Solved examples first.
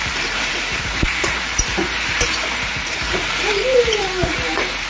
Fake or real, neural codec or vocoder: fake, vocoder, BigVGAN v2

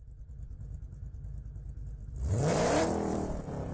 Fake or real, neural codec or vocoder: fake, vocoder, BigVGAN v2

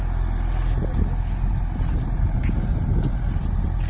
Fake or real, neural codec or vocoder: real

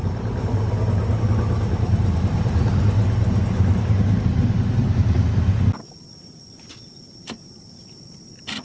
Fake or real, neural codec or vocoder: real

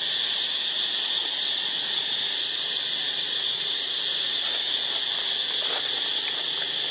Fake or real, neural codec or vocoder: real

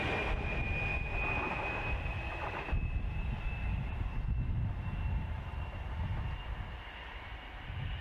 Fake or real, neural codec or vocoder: real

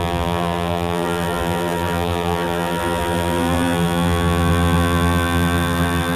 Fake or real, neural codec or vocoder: fake, vocoder, BigVGAN v2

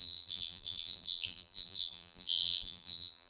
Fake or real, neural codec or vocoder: fake, vocoder, BigVGAN v2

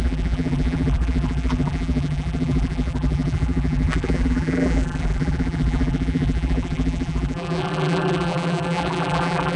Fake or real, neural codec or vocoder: fake, vocoder, BigVGAN v2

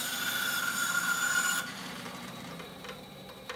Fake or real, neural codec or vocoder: fake, vocoder, BigVGAN v2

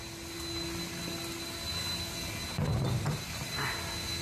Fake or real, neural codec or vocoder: real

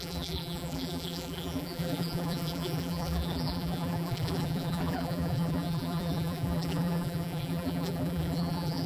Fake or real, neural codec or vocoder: fake, vocoder, BigVGAN v2